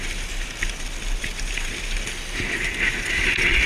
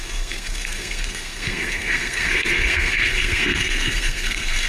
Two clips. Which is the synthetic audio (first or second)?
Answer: second